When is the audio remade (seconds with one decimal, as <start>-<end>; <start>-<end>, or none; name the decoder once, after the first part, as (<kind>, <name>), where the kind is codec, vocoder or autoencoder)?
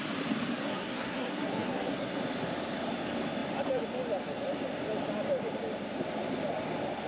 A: 0.6-2.2 (codec, SNAC)